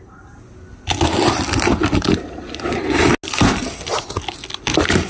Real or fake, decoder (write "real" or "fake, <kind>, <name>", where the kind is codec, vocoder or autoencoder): real